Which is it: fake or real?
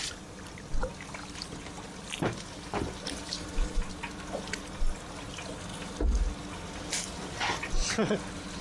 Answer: real